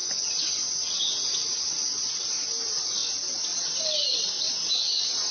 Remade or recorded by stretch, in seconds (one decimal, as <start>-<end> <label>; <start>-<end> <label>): 0.0-1.5 recorded; 1.5-5.3 remade